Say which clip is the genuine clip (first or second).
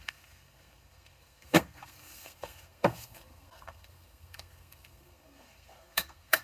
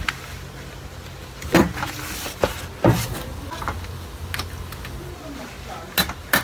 second